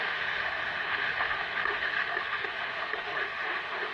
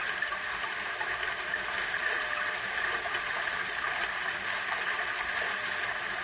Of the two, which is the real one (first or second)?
second